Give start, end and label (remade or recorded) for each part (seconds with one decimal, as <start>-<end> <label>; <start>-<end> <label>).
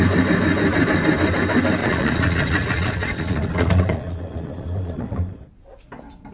0.0-1.8 recorded; 1.8-5.6 remade; 5.6-6.3 recorded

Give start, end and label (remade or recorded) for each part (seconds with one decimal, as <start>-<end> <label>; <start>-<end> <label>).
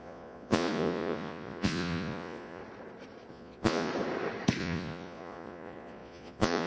0.0-2.6 remade; 2.6-3.3 recorded; 3.3-3.9 remade; 3.9-4.6 recorded; 4.6-6.7 remade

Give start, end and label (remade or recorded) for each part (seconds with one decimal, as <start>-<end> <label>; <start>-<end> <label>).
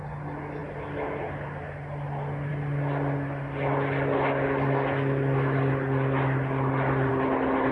0.0-7.7 recorded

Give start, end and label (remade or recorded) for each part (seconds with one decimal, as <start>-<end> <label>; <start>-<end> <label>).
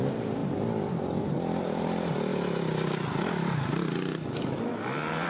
0.0-5.3 recorded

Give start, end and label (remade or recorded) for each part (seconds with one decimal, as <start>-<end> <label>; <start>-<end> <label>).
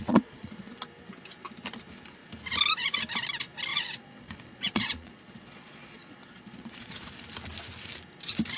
0.0-0.7 remade; 0.7-3.7 recorded; 3.7-7.1 remade; 7.1-8.6 recorded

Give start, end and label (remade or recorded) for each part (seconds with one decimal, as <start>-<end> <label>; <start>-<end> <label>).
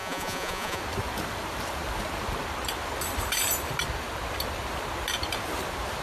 0.0-0.8 remade; 0.8-6.0 recorded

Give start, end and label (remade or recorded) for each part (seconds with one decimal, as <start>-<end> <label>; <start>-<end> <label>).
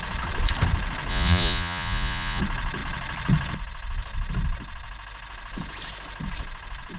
0.0-1.1 recorded; 1.1-2.4 remade; 2.4-7.0 recorded